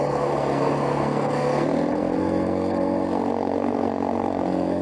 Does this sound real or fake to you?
fake